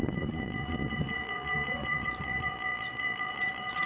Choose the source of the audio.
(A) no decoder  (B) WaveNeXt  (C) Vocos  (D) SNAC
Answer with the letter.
C